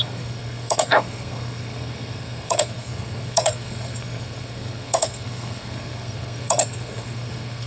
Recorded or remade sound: remade